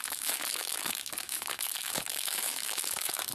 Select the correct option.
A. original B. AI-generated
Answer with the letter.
B